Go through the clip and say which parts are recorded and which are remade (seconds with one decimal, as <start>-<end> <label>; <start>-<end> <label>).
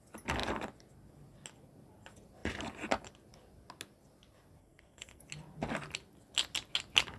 0.0-4.6 recorded; 4.6-5.2 remade; 5.2-7.2 recorded